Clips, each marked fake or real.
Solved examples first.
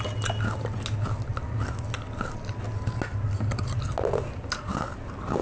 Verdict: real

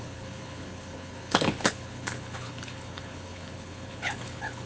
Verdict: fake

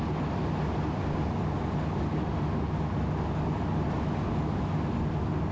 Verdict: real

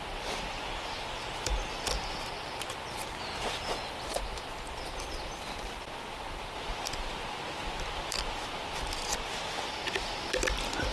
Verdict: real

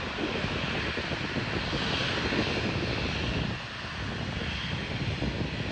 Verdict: real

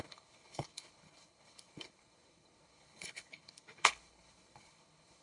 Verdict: fake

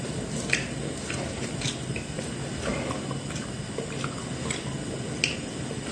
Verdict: real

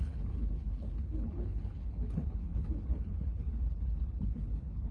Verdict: fake